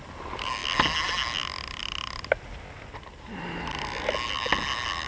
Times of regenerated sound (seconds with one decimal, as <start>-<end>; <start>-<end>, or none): none